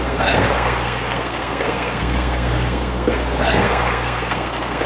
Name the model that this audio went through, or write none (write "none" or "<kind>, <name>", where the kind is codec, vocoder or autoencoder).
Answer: codec, SNAC